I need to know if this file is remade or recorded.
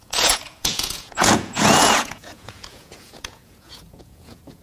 remade